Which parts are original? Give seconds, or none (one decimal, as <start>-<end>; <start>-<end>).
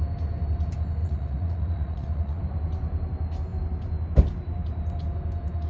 0.0-1.0; 2.4-5.7